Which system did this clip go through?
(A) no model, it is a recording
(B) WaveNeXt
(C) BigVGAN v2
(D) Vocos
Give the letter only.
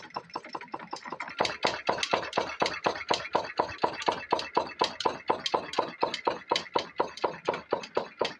A